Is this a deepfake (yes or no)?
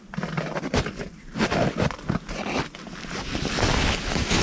yes